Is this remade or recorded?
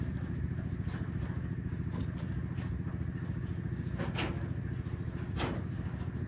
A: recorded